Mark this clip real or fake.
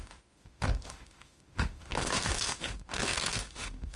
fake